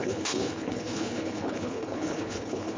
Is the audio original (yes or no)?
no